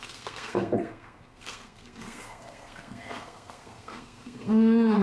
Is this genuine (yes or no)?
no